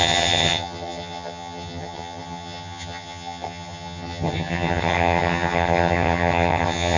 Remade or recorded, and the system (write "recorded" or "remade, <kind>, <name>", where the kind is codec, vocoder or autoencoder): remade, vocoder, HiFi-GAN